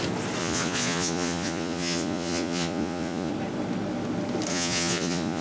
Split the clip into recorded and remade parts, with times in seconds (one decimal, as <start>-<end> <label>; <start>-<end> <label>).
0.0-0.4 recorded; 0.4-3.3 remade; 3.3-4.5 recorded; 4.5-5.4 remade